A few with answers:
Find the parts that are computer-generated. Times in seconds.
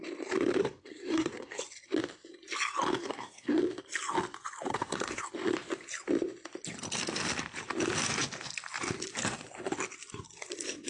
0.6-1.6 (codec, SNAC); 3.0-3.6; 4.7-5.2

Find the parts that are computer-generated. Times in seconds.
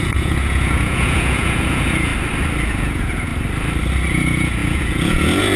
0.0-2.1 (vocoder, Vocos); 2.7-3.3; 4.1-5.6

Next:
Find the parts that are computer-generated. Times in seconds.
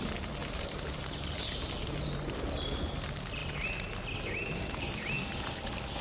none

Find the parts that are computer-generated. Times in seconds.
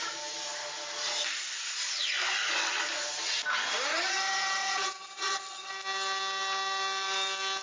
3.9-5.7 (vocoder, HiFi-GAN)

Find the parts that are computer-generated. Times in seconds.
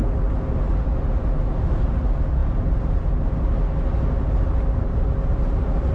none